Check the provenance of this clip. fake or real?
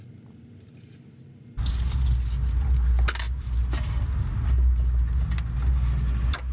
real